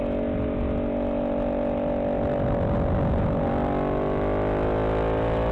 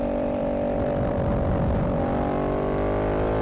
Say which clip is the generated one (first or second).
second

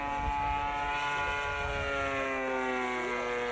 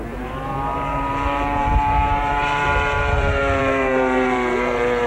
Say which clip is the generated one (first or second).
second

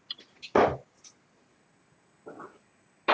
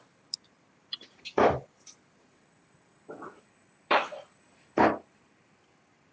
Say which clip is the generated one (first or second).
second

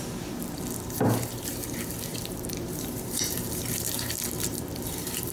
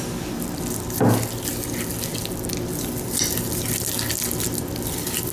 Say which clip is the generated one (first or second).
first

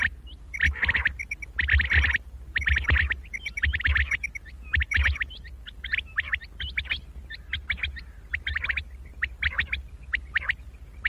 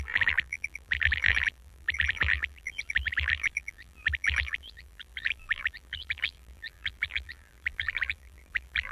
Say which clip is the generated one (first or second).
second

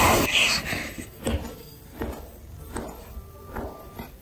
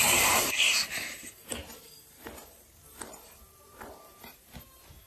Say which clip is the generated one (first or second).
second